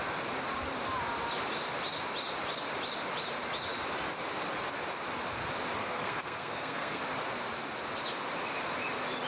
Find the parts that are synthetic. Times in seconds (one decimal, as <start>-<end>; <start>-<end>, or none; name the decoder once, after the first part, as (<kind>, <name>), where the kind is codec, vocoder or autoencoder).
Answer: 5.8-7.0 (codec, SNAC)